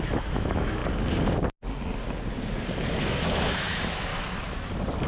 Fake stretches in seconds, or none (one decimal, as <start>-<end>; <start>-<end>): 0.0-0.8; 3.0-4.1